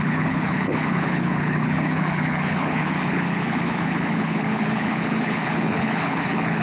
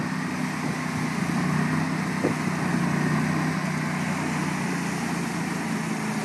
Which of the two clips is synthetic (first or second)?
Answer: first